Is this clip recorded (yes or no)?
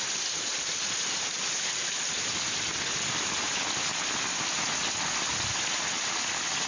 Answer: yes